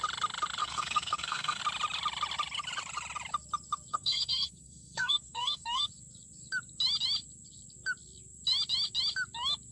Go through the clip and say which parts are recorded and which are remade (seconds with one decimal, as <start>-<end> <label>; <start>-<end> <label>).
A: 0.0-0.6 recorded; 0.6-1.6 remade; 1.6-3.9 recorded; 3.9-5.9 remade; 5.9-9.7 recorded